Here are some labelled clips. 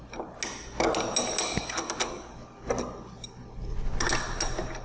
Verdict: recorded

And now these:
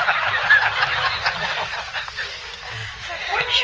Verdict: recorded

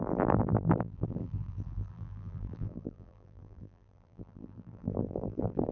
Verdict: remade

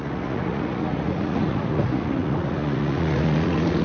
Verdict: remade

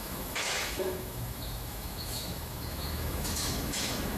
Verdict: remade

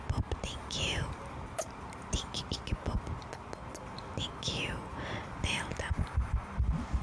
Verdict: recorded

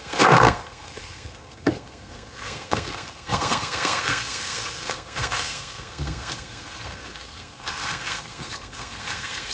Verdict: remade